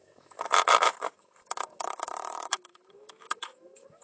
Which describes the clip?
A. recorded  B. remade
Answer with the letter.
B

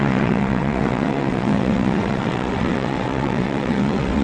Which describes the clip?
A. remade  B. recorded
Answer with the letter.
A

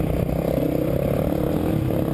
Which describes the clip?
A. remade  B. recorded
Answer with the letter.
B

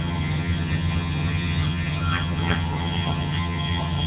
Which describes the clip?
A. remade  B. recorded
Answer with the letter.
A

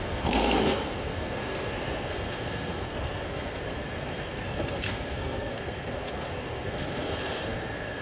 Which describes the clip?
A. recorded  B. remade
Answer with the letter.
B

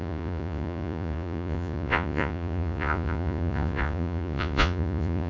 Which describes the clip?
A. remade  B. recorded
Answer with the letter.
A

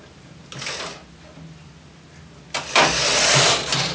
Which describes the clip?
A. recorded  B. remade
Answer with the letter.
A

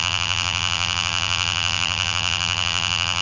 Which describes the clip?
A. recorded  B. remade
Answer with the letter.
B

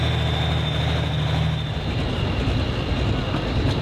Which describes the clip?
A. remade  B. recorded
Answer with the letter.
B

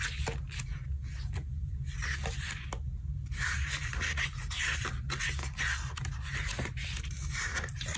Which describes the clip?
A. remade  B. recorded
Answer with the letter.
B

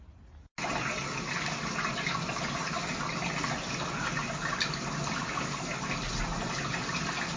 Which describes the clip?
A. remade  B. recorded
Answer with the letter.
B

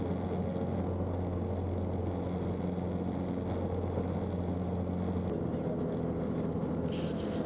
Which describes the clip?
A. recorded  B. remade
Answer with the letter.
A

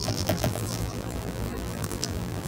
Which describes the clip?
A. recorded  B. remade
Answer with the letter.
B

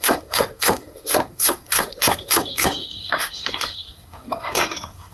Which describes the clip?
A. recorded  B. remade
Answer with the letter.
B